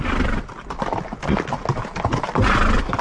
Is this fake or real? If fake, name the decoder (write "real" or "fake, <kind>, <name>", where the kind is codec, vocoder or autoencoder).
real